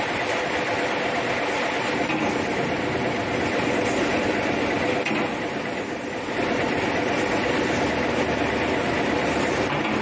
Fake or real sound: real